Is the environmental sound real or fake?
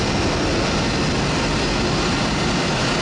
real